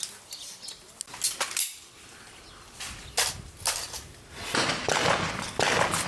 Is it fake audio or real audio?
real